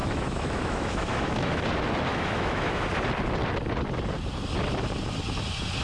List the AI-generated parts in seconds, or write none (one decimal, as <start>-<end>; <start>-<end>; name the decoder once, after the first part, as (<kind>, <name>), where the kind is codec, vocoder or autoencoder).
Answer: 0.0-1.6 (autoencoder, DAC-VAE); 2.1-2.8